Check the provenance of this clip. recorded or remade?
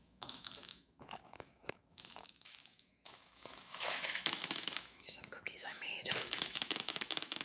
remade